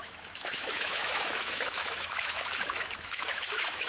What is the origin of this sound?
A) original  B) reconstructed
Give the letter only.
B